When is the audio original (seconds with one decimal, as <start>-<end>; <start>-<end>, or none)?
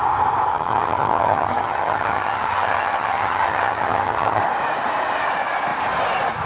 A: 0.0-0.5; 4.4-6.5